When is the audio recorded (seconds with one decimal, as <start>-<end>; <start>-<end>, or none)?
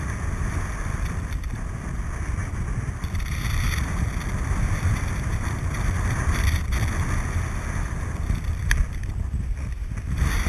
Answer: none